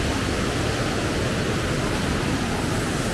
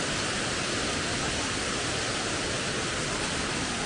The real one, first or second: first